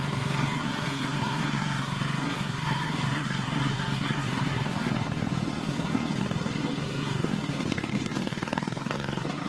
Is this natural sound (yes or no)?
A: no